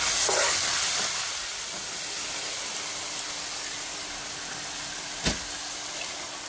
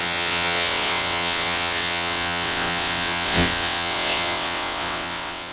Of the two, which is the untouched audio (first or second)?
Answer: first